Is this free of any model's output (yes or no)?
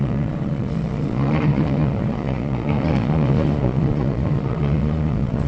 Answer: no